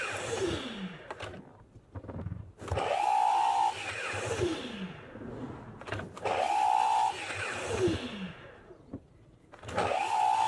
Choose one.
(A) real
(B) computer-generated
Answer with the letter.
A